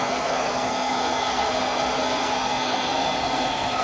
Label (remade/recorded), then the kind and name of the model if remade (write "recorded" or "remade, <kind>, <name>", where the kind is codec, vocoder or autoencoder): remade, codec, SNAC